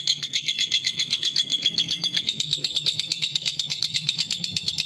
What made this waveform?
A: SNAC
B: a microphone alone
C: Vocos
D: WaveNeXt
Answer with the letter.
A